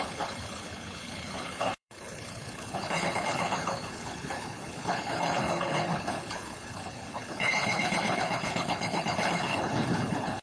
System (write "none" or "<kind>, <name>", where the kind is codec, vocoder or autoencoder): codec, HILCodec